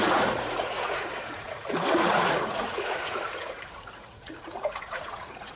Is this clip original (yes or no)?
no